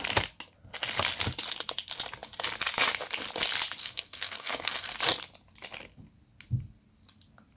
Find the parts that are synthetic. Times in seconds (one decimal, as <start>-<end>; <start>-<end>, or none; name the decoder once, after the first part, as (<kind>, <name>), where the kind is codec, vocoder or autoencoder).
3.8-5.0 (codec, SNAC)